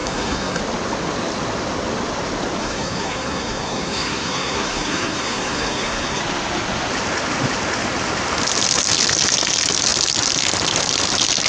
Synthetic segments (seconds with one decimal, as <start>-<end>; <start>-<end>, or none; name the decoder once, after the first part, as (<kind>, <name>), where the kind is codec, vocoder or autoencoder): 0.0-0.6 (codec, SNAC); 2.6-6.2